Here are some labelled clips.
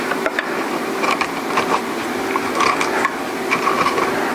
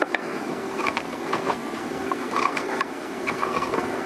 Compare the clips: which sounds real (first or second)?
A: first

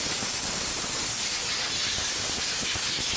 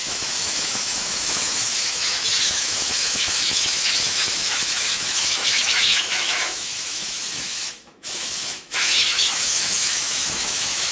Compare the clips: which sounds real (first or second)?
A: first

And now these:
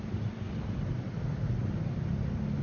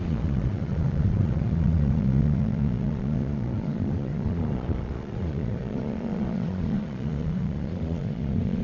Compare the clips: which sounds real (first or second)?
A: first